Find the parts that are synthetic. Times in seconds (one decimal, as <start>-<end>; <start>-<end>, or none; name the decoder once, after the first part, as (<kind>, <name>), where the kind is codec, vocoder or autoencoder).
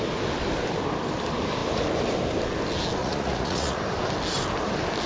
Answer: 3.0-3.8 (vocoder, Vocos)